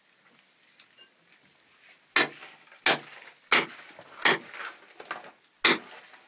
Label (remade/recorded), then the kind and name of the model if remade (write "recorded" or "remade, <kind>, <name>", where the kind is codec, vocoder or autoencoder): recorded